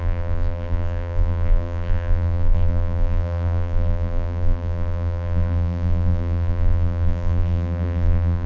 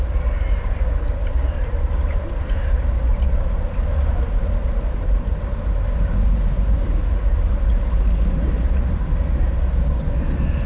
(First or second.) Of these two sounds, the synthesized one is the first